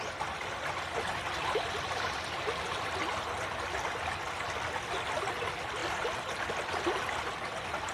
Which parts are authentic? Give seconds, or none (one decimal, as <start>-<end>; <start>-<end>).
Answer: 0.0-7.9